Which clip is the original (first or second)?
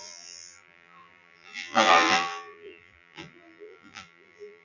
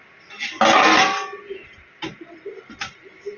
second